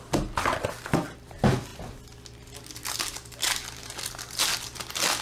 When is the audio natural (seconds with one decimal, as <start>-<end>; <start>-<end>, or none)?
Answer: 0.0-5.2

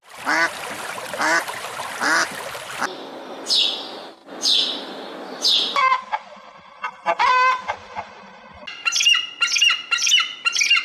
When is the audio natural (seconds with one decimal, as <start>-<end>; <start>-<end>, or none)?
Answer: 0.0-10.8

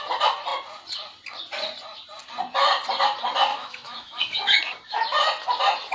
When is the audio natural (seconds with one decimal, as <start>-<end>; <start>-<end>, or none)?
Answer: 0.0-3.5; 4.6-5.9

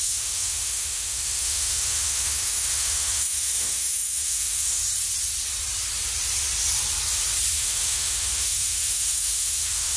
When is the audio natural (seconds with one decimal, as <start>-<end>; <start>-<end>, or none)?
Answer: 4.8-7.5

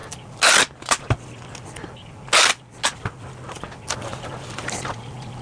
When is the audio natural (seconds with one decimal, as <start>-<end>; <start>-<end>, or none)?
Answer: 0.0-5.4

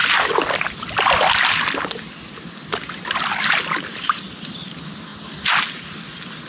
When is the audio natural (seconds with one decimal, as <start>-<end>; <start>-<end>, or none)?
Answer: 0.0-6.5